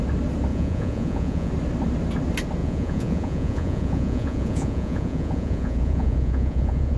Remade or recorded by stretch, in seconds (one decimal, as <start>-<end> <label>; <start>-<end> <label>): 0.0-0.5 recorded; 0.5-1.5 remade; 1.5-2.6 recorded; 2.6-7.0 remade